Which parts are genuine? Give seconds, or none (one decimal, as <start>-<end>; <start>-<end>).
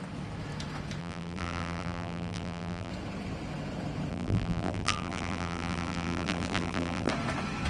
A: 0.0-1.0; 2.9-4.1; 7.1-7.7